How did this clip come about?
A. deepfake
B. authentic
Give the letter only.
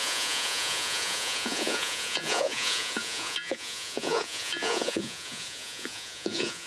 A